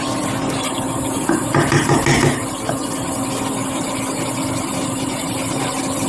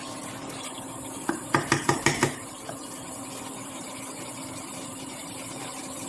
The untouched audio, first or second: first